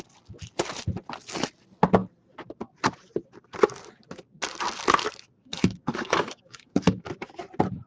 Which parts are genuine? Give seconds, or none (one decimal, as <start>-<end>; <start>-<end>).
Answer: 0.0-5.4; 7.1-7.9